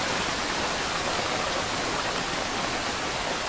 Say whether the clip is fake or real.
real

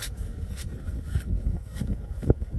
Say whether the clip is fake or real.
fake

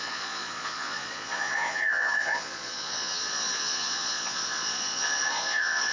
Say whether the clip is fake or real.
fake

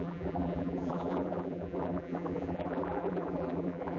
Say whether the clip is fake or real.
fake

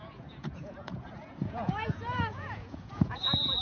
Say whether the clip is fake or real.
fake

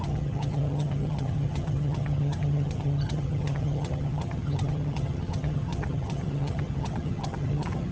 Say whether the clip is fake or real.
fake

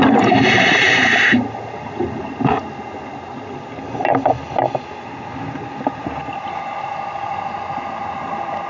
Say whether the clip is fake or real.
real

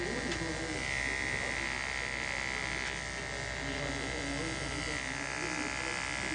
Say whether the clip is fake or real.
real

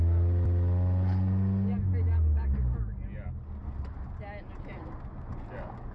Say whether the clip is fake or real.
real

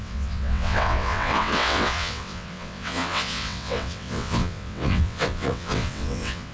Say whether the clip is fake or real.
fake